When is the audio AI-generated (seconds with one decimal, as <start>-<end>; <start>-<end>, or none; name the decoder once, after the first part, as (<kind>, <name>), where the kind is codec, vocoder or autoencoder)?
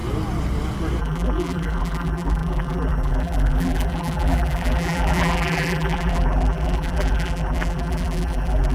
1.0-8.7 (vocoder, BigVGAN v2)